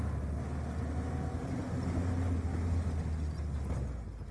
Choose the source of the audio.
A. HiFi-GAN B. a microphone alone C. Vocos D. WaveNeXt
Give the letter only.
B